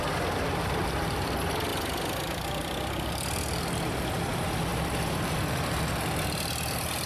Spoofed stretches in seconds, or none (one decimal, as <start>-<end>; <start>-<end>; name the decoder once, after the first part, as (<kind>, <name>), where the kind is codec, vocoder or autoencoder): 1.7-4.2 (vocoder, BigVGAN v2); 4.7-5.8